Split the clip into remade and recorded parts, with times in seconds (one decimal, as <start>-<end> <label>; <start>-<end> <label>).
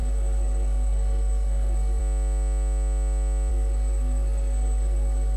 0.0-2.0 remade; 2.0-3.5 recorded; 3.5-5.4 remade